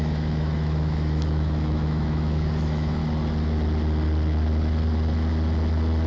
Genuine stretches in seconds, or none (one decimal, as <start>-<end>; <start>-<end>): 3.0-6.1